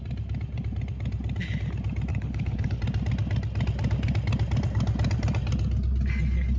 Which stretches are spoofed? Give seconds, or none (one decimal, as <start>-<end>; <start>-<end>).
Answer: 2.1-2.8